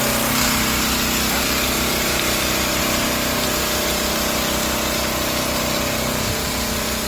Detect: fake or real real